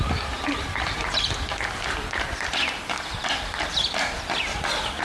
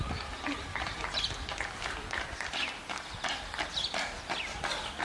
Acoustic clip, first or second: second